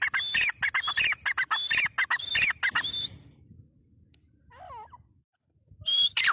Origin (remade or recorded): recorded